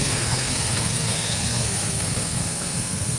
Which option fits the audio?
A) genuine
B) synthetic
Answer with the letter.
B